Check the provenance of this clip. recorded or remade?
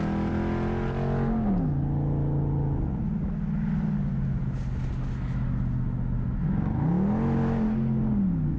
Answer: recorded